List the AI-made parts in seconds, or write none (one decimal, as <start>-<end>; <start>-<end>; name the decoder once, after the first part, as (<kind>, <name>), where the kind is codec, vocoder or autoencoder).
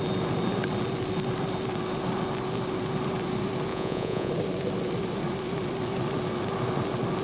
3.7-4.3 (vocoder, Vocos)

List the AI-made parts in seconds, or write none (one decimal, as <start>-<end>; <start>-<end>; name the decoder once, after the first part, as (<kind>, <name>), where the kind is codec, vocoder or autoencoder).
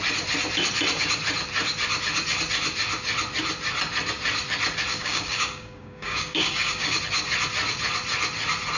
4.9-7.0 (codec, DAC)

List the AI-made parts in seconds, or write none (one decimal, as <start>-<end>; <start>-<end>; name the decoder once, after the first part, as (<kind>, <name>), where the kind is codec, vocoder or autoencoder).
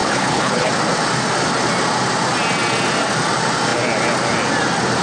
0.0-0.7 (codec, HILCodec)